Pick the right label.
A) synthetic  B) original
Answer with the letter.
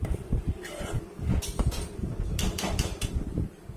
A